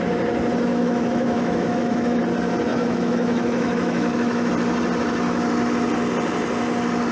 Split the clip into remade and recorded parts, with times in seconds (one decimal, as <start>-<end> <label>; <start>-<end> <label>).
0.0-0.7 recorded; 0.7-2.2 remade; 2.2-2.7 recorded; 2.7-4.5 remade; 4.5-7.1 recorded